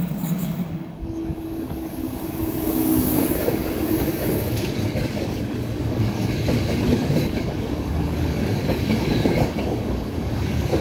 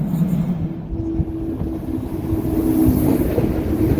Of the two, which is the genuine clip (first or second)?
second